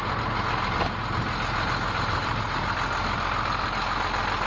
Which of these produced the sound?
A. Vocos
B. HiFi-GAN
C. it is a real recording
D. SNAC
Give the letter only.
C